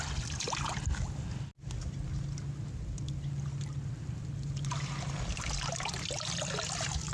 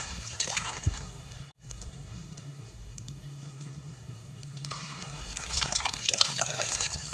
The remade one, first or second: second